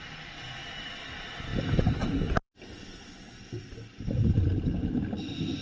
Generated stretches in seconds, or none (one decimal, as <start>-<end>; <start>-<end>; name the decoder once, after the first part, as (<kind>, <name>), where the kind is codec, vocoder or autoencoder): 0.0-0.6 (vocoder, BigVGAN v2); 1.1-1.5; 2.3-3.6